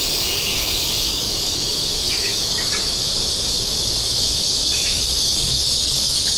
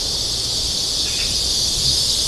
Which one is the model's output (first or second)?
first